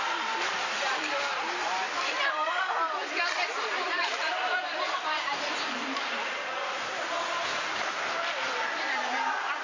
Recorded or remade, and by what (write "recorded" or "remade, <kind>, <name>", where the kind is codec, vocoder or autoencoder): remade, vocoder, BigVGAN v2